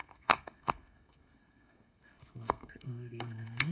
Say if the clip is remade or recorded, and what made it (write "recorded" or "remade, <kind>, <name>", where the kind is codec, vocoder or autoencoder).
remade, codec, SNAC